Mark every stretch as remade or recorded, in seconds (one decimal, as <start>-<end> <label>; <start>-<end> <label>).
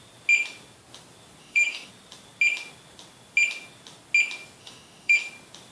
0.0-1.4 recorded; 1.4-1.9 remade; 1.9-4.6 recorded; 4.6-5.2 remade; 5.2-5.7 recorded